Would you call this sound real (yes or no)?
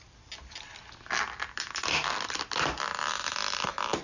yes